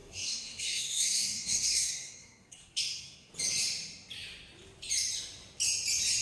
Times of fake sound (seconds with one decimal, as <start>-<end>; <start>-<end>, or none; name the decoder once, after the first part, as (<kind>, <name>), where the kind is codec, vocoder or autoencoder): 0.0-3.3 (codec, SNAC)